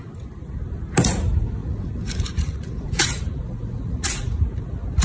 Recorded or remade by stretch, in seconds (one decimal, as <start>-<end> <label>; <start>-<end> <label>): 0.0-1.6 recorded; 1.6-4.6 remade; 4.6-5.0 recorded